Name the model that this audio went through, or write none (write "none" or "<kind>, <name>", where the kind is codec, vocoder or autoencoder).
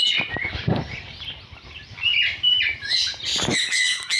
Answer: none